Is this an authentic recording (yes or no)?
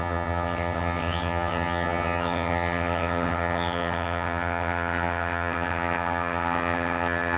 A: no